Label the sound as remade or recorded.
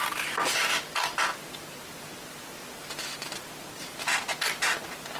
recorded